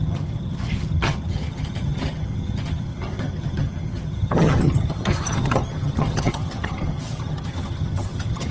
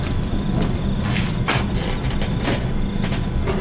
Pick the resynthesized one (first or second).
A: first